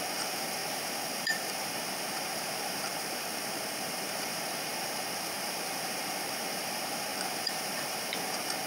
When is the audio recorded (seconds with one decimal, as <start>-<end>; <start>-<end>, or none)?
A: none